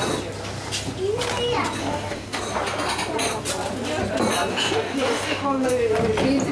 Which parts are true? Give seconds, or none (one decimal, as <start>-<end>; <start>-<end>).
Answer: 0.0-1.8; 2.4-4.5; 5.7-6.5